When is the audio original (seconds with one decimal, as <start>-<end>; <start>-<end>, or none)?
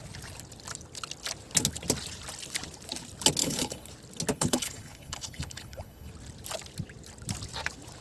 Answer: 0.0-3.4; 3.9-4.3; 6.1-8.0